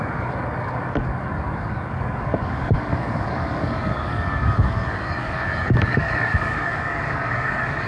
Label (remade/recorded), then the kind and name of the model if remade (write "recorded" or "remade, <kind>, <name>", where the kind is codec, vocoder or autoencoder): remade, codec, DAC